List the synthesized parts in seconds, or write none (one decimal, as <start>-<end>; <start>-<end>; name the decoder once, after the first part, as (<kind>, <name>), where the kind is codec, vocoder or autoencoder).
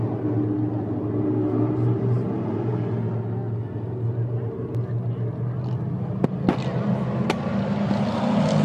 none